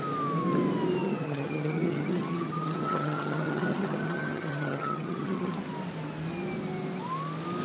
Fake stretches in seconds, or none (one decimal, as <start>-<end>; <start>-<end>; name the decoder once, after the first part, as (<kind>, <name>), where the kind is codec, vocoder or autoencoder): 1.0-5.6 (vocoder, HiFi-GAN)